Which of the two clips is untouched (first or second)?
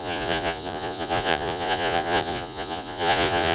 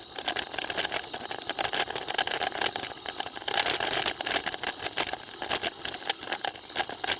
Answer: second